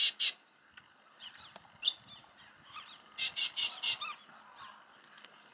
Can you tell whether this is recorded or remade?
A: recorded